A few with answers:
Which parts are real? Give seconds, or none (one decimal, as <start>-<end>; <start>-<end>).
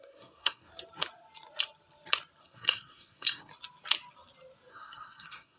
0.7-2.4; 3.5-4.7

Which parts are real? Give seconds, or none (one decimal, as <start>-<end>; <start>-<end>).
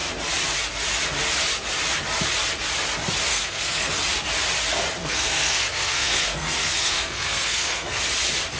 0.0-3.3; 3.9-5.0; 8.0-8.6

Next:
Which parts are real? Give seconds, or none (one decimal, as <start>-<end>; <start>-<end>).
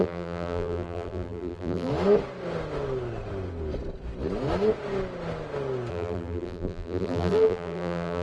1.9-5.9